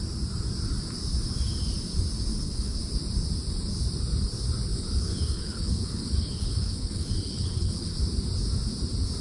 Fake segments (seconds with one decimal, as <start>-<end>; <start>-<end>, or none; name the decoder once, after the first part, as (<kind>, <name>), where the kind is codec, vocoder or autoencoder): 2.3-2.8 (codec, HILCodec); 4.7-8.0